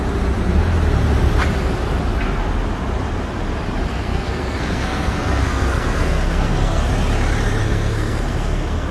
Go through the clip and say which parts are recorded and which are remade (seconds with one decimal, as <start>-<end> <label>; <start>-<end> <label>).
0.0-3.9 recorded; 3.9-6.9 remade; 6.9-7.6 recorded; 7.6-8.9 remade